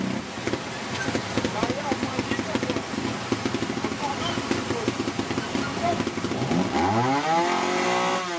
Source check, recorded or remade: recorded